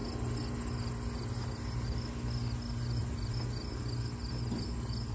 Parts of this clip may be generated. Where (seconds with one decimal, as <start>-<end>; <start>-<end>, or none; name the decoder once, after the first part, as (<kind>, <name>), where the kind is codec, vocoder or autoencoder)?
none